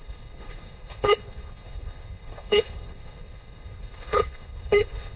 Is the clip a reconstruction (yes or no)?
yes